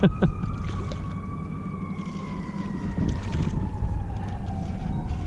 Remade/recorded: recorded